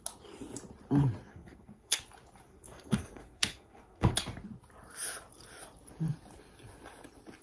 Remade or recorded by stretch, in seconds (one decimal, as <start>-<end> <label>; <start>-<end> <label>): 0.0-1.3 recorded; 1.3-2.0 remade; 2.0-2.5 recorded; 2.5-4.1 remade; 4.1-7.4 recorded